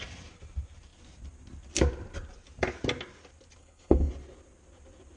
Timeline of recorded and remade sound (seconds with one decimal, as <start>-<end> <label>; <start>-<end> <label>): 0.0-3.6 recorded; 3.6-4.1 remade; 4.1-5.2 recorded